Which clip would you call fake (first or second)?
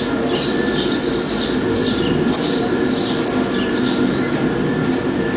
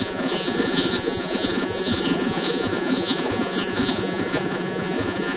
second